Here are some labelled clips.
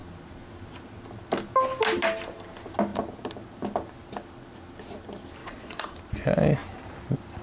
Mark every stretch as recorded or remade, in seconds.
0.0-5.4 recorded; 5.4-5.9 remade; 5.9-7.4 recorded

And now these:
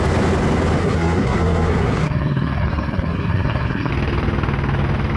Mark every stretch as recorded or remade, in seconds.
0.0-0.8 recorded; 0.8-3.9 remade; 3.9-5.2 recorded

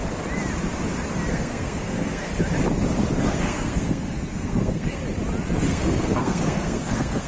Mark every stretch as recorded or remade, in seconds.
0.0-1.3 recorded; 1.3-2.3 remade; 2.3-3.2 recorded; 3.2-5.0 remade; 5.0-5.7 recorded; 5.7-7.3 remade

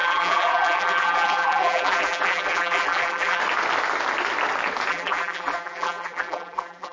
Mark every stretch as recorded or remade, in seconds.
0.0-3.4 remade; 3.4-4.9 recorded; 4.9-6.9 remade